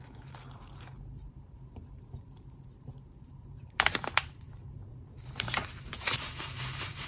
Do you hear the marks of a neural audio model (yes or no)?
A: yes